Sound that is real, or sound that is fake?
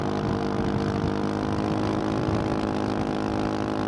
real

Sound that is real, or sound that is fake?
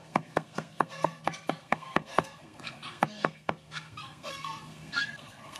fake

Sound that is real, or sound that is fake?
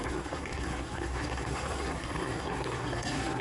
fake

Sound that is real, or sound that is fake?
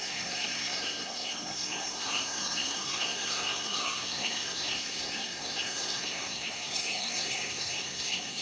fake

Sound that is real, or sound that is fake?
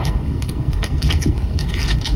fake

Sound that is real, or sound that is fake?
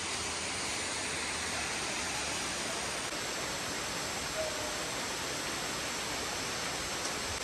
real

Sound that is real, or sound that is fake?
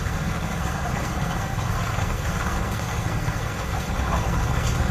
fake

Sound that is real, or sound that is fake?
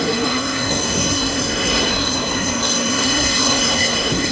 fake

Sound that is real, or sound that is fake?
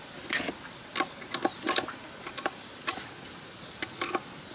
real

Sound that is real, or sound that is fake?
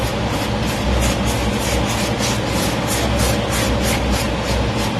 real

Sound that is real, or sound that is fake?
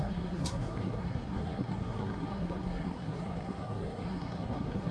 fake